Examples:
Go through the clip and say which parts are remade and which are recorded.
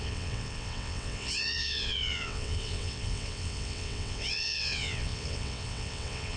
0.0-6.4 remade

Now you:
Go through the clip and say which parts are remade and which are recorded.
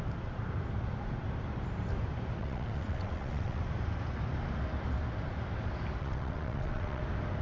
0.0-2.4 recorded; 2.4-3.6 remade; 3.6-6.0 recorded; 6.0-7.0 remade; 7.0-7.4 recorded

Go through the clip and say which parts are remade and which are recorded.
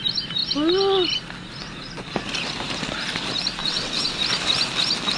0.0-3.6 recorded; 3.6-4.2 remade; 4.2-5.2 recorded